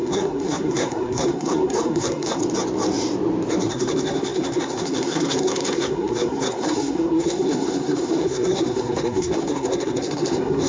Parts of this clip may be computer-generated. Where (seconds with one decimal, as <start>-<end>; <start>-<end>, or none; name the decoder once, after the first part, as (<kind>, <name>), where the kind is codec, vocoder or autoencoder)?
0.0-2.4 (codec, SNAC); 3.7-10.7